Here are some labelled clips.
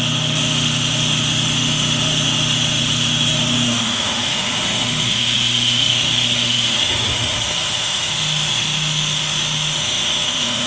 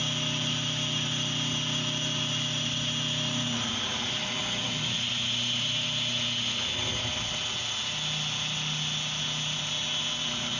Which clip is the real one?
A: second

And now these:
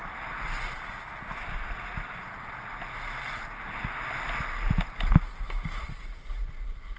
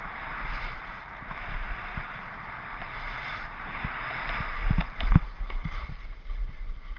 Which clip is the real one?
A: first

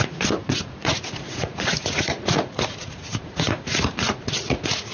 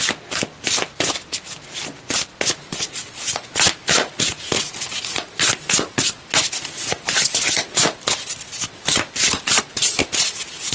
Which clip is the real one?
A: second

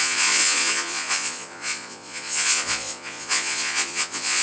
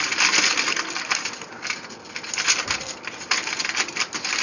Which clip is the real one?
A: second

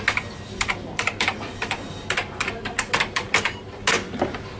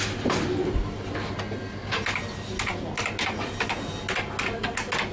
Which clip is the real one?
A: second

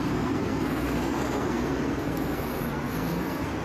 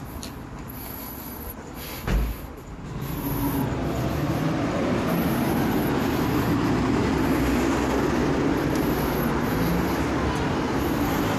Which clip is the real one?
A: second